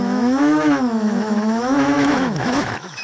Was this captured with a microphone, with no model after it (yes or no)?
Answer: no